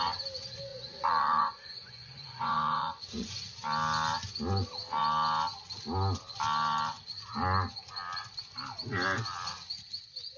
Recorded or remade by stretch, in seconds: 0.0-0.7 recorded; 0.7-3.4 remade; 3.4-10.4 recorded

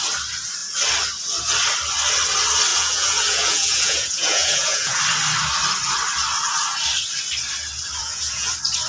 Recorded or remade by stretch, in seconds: 0.0-2.7 recorded; 2.7-5.0 remade; 5.0-8.0 recorded; 8.0-8.5 remade; 8.5-8.9 recorded

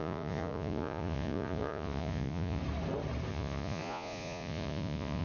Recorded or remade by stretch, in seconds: 0.0-2.6 remade; 2.6-3.3 recorded; 3.3-5.2 remade

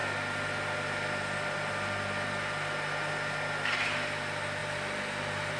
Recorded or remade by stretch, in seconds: 0.0-5.6 recorded

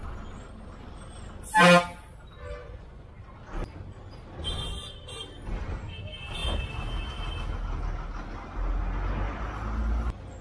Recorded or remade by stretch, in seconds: 0.0-2.6 recorded; 2.6-3.1 remade; 3.1-10.4 recorded

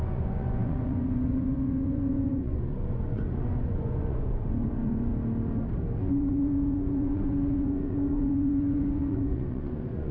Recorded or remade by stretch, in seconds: 0.0-5.1 remade; 5.1-6.0 recorded; 6.0-10.1 remade